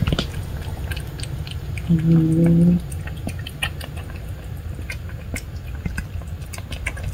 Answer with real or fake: real